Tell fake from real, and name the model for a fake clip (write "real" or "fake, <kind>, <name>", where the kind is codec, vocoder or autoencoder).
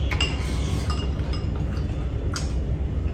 real